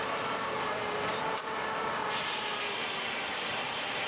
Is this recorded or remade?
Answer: recorded